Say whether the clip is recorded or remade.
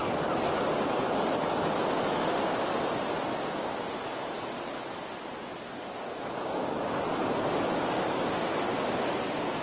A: recorded